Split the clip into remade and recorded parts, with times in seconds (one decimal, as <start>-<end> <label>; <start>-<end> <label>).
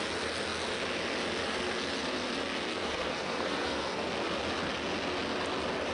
0.0-2.7 recorded; 2.7-4.1 remade; 4.1-5.9 recorded